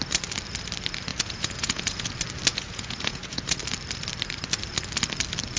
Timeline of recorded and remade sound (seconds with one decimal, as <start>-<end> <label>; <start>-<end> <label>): 0.0-1.1 recorded; 1.1-2.1 remade; 2.1-2.5 recorded; 2.5-3.6 remade; 3.6-5.6 recorded